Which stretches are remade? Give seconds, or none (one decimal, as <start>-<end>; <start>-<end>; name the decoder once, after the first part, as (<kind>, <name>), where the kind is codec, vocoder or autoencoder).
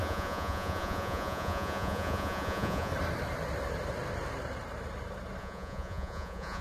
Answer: 0.0-2.9 (vocoder, Vocos); 5.4-6.6